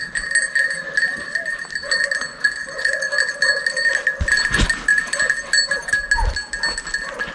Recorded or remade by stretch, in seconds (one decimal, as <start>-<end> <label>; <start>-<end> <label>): 0.0-2.3 recorded; 2.3-3.1 remade; 3.1-7.3 recorded